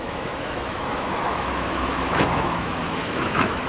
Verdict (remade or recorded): remade